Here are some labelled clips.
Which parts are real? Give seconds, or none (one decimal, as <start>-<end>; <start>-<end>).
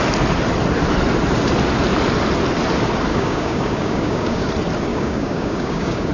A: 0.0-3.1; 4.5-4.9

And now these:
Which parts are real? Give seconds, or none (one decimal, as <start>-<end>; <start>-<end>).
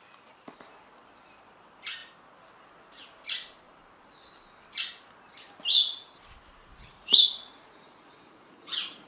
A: 0.0-6.9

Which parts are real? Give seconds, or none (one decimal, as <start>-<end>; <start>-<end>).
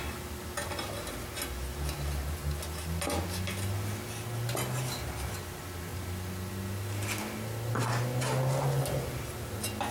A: 0.0-9.9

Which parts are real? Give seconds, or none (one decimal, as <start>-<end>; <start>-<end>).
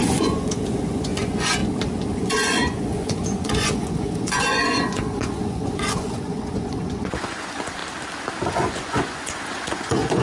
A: 1.6-2.1; 7.8-8.5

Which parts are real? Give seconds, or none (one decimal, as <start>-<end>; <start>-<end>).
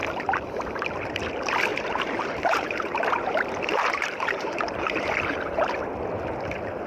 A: 0.0-1.7; 5.8-6.9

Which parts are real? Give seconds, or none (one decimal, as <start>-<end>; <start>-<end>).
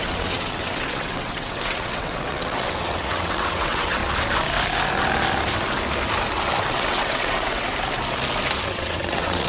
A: 4.0-6.6; 7.7-8.7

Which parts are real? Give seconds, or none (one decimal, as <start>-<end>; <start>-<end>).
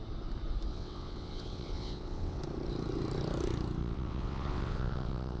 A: 0.0-0.7; 2.4-3.8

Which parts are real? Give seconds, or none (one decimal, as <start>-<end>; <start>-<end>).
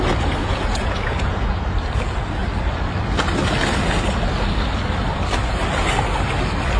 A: 0.0-0.4; 1.6-6.8